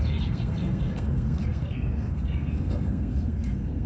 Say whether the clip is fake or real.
fake